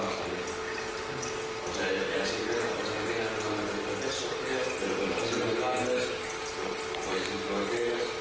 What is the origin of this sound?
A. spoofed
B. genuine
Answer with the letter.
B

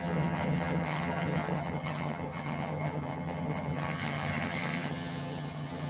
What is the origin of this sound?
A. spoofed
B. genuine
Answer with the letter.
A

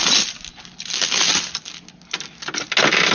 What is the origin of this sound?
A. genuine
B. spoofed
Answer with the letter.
A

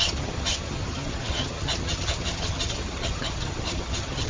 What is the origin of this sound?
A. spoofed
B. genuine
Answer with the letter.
A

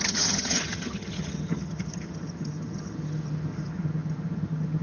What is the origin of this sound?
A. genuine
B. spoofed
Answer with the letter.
B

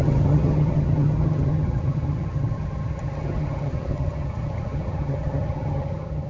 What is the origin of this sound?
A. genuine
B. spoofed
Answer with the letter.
B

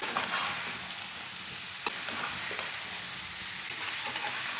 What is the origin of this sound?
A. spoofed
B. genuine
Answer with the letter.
B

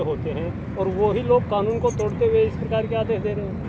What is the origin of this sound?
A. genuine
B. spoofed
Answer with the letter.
A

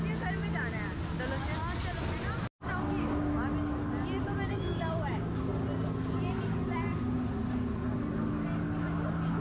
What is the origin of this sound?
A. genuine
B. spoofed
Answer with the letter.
A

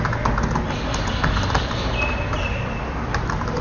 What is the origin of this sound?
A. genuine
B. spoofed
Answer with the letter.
A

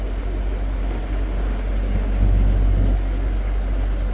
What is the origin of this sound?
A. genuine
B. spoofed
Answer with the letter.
A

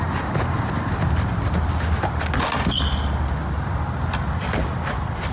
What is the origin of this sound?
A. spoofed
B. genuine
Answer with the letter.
B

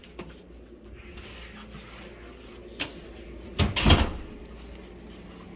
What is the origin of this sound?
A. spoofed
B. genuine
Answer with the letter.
B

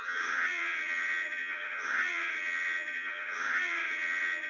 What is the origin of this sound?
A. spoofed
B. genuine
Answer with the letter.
A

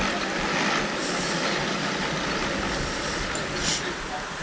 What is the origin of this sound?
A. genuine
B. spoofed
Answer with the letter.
A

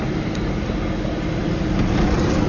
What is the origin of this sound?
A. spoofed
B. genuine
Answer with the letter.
B